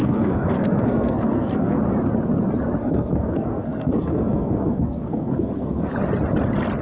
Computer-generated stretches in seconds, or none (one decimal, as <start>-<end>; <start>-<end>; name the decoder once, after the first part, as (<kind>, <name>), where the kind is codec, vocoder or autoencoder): 0.0-1.8 (codec, SNAC); 2.8-5.9